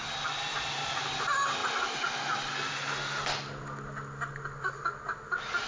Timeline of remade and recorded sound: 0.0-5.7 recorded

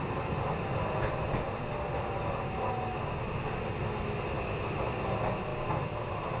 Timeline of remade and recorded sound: 0.0-6.4 recorded

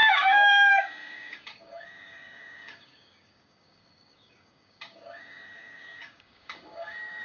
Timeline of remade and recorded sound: 0.0-7.2 remade

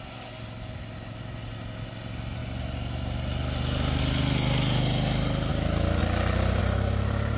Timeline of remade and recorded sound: 0.0-6.0 recorded; 6.0-6.6 remade; 6.6-7.4 recorded

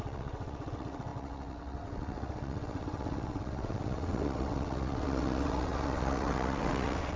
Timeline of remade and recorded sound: 0.0-7.2 remade